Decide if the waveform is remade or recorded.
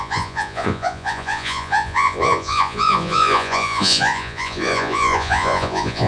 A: remade